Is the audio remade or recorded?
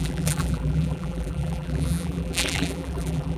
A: remade